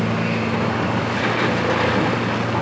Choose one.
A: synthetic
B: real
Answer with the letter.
B